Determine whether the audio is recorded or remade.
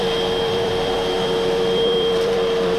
remade